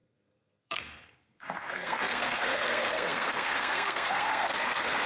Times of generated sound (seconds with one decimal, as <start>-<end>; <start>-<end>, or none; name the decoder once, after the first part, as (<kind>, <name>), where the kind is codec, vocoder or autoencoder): 0.0-5.1 (codec, SNAC)